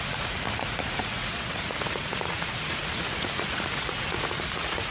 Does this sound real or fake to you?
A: fake